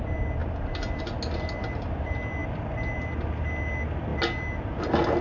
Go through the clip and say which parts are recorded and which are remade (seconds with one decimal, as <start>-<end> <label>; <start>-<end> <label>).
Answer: 0.0-5.2 recorded